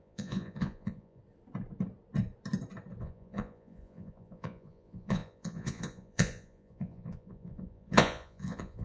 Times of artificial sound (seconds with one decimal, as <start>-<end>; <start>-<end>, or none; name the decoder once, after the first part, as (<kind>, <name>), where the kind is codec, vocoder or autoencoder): 0.0-1.2 (vocoder, Vocos); 3.0-8.8